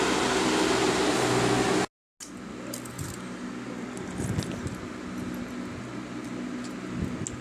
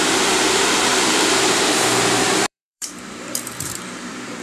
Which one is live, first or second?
first